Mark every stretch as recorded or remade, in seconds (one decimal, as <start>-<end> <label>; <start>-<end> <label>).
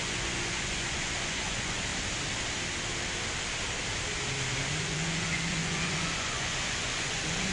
0.0-1.9 remade; 1.9-4.8 recorded; 4.8-7.5 remade